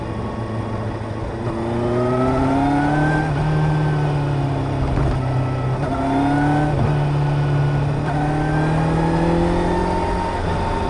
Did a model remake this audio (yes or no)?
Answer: no